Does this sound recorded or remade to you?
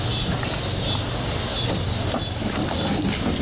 recorded